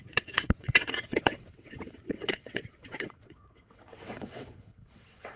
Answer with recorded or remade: remade